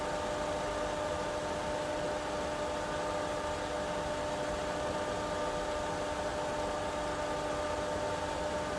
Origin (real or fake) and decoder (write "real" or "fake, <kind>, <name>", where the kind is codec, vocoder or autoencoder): real